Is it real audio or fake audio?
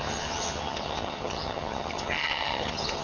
fake